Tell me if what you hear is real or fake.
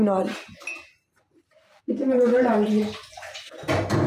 fake